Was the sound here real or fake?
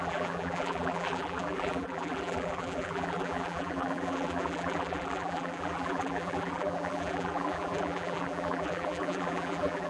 fake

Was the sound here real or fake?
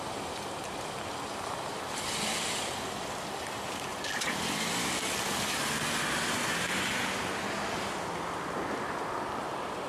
real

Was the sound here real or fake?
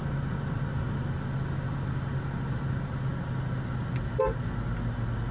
real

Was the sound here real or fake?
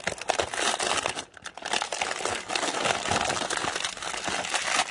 real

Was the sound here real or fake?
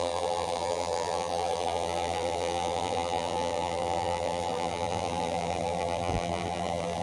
fake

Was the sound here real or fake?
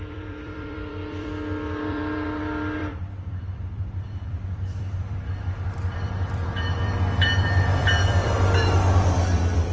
fake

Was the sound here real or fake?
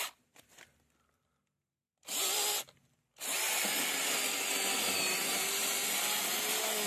real